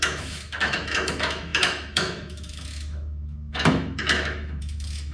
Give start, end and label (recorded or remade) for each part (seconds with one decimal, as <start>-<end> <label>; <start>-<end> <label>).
0.0-5.1 remade